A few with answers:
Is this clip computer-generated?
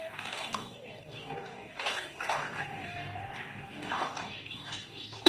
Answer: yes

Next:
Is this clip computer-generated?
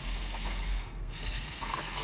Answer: yes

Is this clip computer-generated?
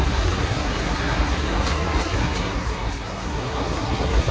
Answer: yes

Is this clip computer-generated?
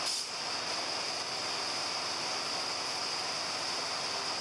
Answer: no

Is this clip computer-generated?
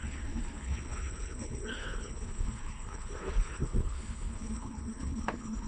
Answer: yes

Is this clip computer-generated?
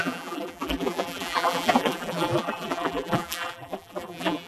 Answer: yes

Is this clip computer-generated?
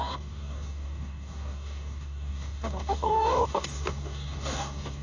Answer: yes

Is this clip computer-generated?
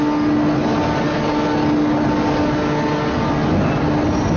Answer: no